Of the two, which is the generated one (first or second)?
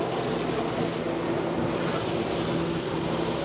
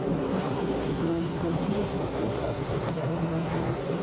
second